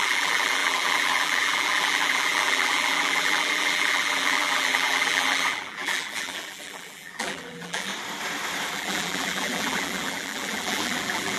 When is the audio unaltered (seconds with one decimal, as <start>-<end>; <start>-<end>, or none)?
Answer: 7.9-8.7